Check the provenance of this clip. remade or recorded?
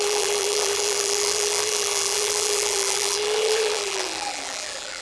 remade